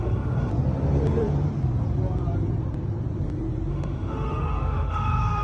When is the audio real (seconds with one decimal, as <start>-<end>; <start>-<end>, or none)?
0.5-3.7